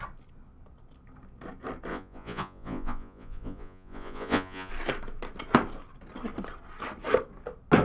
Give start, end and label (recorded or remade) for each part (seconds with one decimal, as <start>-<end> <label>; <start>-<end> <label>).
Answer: 0.0-1.9 recorded; 1.9-4.7 remade; 4.7-7.8 recorded